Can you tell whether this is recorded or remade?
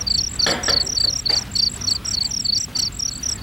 recorded